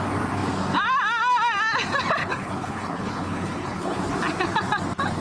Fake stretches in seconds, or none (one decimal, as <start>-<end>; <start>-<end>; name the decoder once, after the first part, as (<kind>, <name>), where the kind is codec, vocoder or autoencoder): 2.2-4.0 (codec, HILCodec)

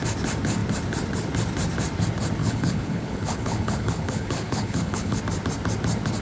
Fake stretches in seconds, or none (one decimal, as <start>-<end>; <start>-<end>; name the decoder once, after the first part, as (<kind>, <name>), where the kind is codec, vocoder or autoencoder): 2.4-5.2 (codec, HILCodec)

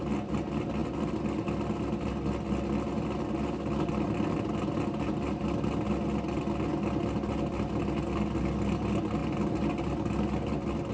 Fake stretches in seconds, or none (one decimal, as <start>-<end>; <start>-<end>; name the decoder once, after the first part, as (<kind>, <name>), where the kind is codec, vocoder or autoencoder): none

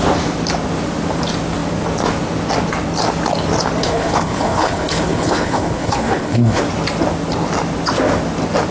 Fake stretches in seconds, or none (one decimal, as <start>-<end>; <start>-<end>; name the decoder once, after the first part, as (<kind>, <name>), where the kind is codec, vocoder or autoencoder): 3.8-6.6 (codec, HILCodec)

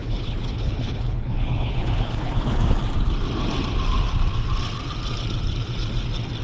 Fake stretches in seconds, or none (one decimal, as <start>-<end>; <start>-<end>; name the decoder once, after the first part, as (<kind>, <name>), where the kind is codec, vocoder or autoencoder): 0.0-2.6 (codec, HILCodec)

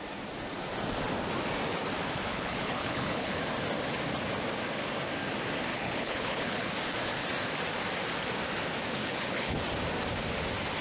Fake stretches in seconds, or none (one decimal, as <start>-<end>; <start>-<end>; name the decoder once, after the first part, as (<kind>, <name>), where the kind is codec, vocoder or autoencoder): 2.3-3.4 (codec, HILCodec); 5.7-6.7; 9.0-9.6

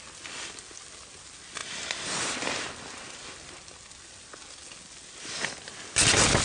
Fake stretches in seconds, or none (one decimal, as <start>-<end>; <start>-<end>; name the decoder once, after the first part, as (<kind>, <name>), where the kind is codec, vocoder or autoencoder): none

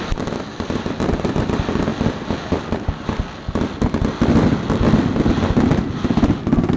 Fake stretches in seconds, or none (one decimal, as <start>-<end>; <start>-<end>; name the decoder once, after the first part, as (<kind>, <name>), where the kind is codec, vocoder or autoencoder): none